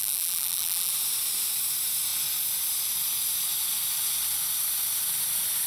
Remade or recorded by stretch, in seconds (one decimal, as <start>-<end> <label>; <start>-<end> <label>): 0.0-0.9 remade; 0.9-5.7 recorded